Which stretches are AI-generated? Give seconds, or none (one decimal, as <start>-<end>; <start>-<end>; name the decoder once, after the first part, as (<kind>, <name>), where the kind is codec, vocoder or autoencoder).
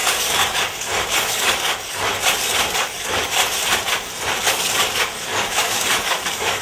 0.0-2.1 (codec, DAC); 2.6-3.4; 4.4-6.6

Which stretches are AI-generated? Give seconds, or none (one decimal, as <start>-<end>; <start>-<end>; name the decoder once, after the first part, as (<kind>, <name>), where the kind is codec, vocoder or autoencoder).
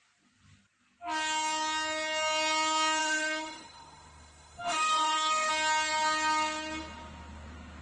3.0-5.5 (autoencoder, DAC-VAE)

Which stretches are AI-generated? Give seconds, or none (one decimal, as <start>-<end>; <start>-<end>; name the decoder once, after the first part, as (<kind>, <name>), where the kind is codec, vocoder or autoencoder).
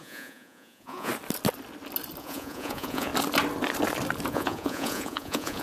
0.0-1.1 (vocoder, Vocos); 2.2-3.1; 4.3-5.6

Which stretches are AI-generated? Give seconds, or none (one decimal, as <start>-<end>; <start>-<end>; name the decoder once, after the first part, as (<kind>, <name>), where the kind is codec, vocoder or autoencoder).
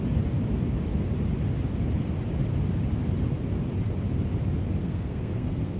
4.8-5.8 (codec, SNAC)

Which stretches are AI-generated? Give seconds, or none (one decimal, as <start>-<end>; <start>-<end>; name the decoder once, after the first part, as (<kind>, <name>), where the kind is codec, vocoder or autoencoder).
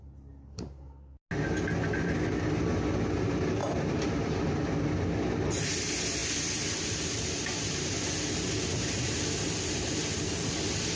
3.6-4.4 (vocoder, BigVGAN v2); 6.2-10.5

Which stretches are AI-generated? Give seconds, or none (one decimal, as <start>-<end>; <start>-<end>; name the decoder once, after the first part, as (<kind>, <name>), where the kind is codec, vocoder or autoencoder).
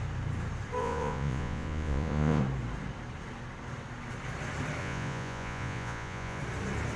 0.8-2.4 (vocoder, Vocos); 4.8-6.4